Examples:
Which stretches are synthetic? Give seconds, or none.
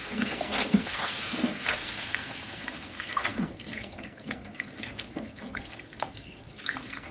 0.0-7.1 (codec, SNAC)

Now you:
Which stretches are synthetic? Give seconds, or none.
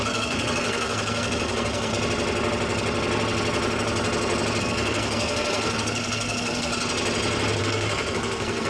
0.0-1.9 (codec, SNAC); 4.6-6.7; 7.6-8.7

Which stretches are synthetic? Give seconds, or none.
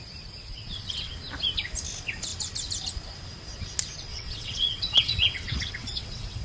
0.5-1.1 (vocoder, WaveNeXt); 4.1-6.4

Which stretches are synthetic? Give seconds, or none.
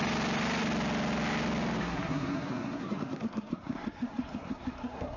1.8-5.2 (codec, SNAC)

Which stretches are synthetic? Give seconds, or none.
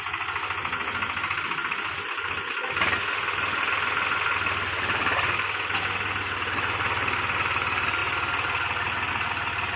none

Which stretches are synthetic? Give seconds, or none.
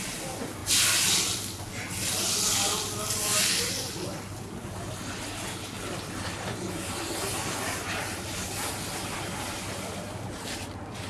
none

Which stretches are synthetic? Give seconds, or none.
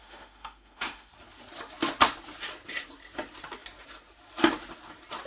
0.0-1.1 (autoencoder, DAC-VAE)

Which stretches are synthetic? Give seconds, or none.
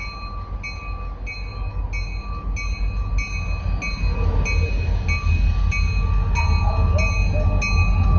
none